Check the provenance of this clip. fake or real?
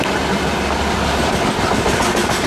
real